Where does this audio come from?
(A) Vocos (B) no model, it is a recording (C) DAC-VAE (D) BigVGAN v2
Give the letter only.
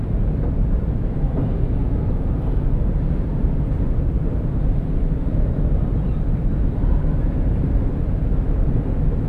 B